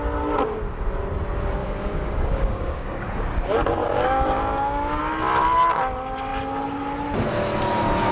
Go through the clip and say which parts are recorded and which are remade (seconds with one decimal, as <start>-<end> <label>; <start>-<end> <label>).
0.0-1.6 recorded; 1.6-3.2 remade; 3.2-3.8 recorded; 3.8-5.0 remade; 5.0-8.1 recorded

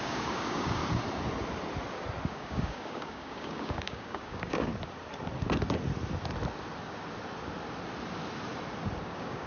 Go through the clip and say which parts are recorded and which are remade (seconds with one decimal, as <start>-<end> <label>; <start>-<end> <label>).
0.0-0.8 remade; 0.8-2.3 recorded; 2.3-4.7 remade; 4.7-9.0 recorded; 9.0-9.5 remade

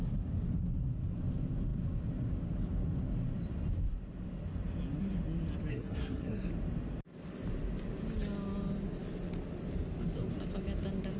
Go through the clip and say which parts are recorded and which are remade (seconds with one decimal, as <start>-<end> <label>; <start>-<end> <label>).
0.0-5.7 recorded; 5.7-6.5 remade; 6.5-11.2 recorded

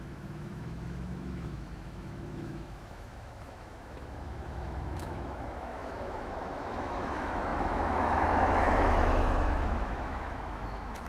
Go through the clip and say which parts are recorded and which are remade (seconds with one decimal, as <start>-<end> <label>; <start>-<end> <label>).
0.0-11.1 remade